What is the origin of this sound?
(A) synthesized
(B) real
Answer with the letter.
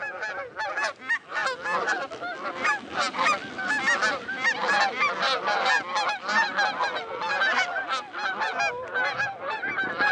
B